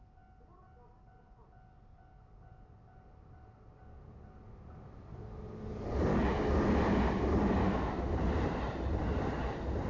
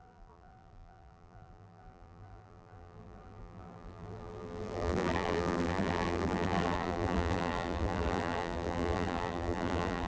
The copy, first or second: second